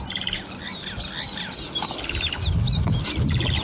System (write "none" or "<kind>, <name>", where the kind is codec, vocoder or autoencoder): none